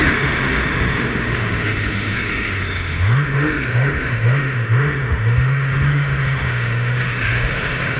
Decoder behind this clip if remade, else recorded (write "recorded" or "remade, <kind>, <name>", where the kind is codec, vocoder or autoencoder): remade, autoencoder, DAC-VAE